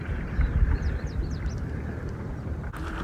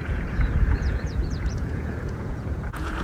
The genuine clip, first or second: first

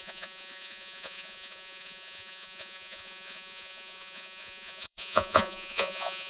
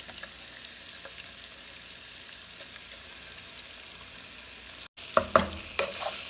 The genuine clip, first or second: second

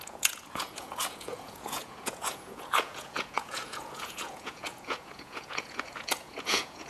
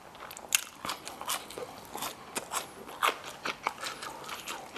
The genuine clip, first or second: second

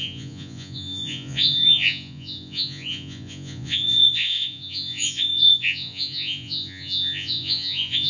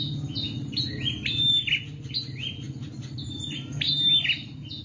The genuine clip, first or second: second